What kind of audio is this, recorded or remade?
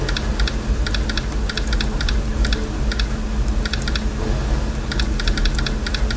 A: recorded